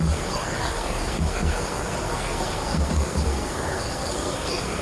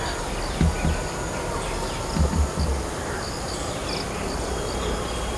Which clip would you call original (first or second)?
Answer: second